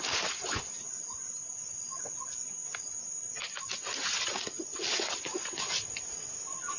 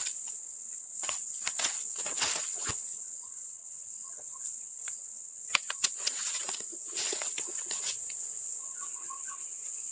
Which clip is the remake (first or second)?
second